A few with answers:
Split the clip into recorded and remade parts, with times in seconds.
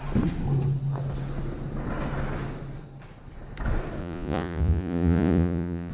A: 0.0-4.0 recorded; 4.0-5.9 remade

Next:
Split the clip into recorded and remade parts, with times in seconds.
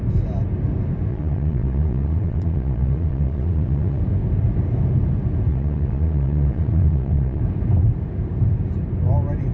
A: 0.0-1.1 recorded; 1.1-4.0 remade; 4.0-5.5 recorded; 5.5-7.4 remade; 7.4-9.5 recorded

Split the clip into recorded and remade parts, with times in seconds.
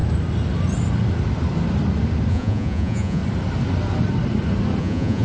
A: 0.0-2.3 recorded; 2.3-3.2 remade; 3.2-4.8 recorded; 4.8-5.2 remade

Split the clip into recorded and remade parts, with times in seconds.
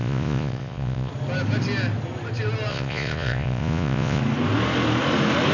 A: 0.0-1.1 remade; 1.1-2.7 recorded; 2.7-4.2 remade; 4.2-5.5 recorded